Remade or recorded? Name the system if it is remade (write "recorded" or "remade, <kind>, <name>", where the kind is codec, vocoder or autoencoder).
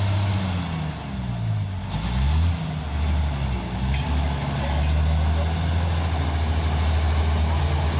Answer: recorded